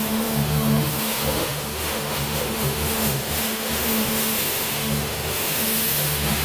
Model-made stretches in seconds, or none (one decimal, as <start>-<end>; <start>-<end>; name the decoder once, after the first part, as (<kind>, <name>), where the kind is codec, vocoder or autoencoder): 0.0-6.4 (autoencoder, DAC-VAE)